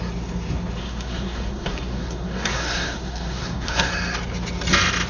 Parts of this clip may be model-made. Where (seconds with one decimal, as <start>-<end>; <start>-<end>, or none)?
0.8-3.9